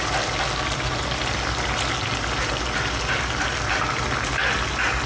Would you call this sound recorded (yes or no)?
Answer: yes